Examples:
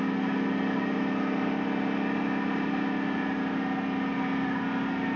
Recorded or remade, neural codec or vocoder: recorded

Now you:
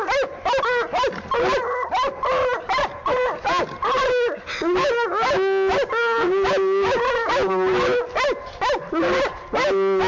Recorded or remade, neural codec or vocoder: recorded